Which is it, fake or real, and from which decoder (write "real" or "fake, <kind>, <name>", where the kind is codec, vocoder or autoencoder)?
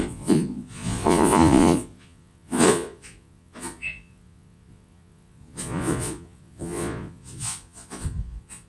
fake, vocoder, Vocos